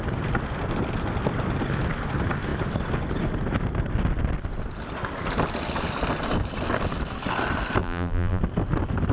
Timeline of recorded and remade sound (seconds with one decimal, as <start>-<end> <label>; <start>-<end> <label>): 0.0-7.8 recorded; 7.8-8.4 remade; 8.4-9.1 recorded